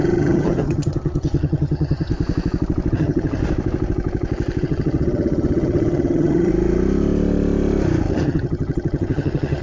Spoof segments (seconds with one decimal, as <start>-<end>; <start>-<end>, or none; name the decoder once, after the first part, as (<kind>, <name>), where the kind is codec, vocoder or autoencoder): 0.0-2.1 (vocoder, HiFi-GAN); 2.9-3.4; 4.6-6.5; 8.1-9.6